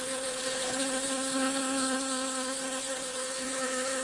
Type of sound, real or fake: fake